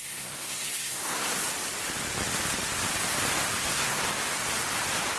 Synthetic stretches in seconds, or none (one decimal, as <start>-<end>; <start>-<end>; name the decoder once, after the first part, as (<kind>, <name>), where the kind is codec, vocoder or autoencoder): 0.0-1.4 (codec, SNAC); 3.6-4.0